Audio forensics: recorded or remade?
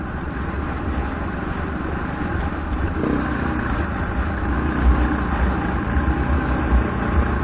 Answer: recorded